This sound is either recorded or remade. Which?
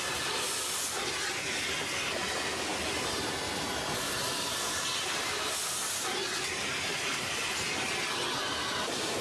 recorded